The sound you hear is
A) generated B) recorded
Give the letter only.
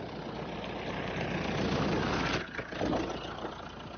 B